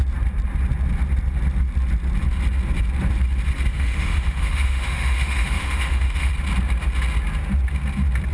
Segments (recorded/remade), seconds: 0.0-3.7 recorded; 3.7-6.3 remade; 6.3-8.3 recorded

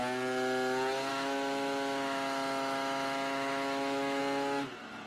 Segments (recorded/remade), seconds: 0.0-1.1 recorded; 1.1-4.2 remade; 4.2-5.1 recorded

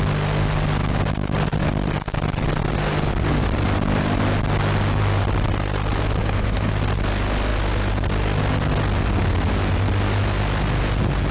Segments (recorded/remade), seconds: 0.0-6.2 recorded; 6.2-6.7 remade; 6.7-11.3 recorded

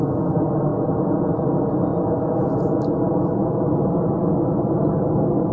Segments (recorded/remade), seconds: 0.0-5.5 recorded